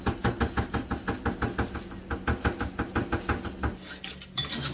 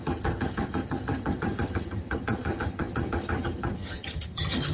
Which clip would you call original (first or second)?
first